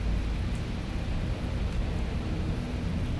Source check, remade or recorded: recorded